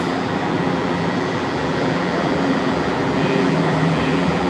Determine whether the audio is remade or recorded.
remade